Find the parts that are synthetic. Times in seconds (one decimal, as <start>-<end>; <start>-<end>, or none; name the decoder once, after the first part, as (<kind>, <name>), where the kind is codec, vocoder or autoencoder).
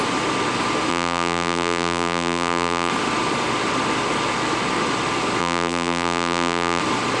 0.9-2.9 (vocoder, BigVGAN v2); 5.4-6.8